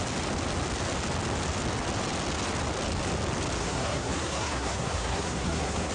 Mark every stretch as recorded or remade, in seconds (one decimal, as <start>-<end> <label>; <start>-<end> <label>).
0.0-3.6 recorded; 3.6-5.9 remade